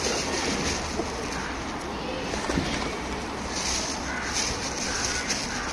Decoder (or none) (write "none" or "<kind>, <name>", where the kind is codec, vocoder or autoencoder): none